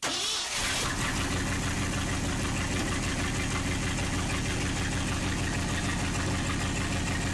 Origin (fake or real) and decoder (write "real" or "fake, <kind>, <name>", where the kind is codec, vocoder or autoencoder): real